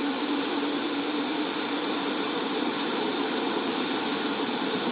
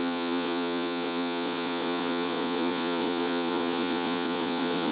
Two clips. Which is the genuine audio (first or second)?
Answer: first